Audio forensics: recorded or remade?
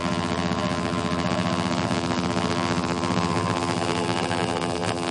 remade